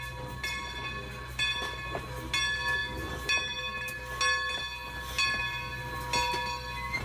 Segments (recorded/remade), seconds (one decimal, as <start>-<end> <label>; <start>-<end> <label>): 0.0-7.0 recorded